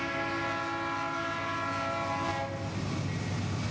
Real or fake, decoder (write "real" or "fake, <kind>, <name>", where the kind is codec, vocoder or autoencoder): real